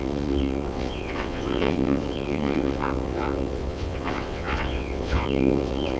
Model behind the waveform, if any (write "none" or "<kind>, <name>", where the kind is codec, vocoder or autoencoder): vocoder, WaveNeXt